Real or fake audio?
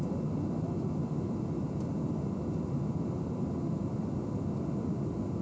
real